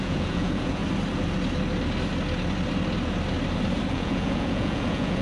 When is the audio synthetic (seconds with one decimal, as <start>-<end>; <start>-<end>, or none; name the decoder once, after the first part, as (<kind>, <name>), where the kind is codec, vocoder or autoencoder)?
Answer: 0.0-0.8 (vocoder, Vocos); 3.9-5.2